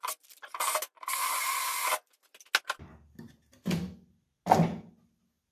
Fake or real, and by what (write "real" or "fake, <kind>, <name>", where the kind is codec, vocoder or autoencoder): real